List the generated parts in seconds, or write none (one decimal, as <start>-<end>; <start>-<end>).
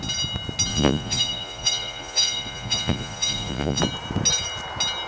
0.7-3.8